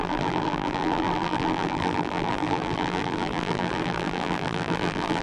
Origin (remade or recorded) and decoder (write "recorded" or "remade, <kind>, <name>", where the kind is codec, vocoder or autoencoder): remade, vocoder, BigVGAN v2